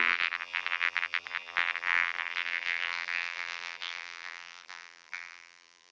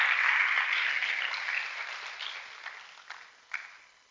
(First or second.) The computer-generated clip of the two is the first